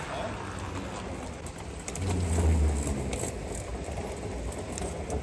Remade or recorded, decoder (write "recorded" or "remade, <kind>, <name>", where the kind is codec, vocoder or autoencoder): recorded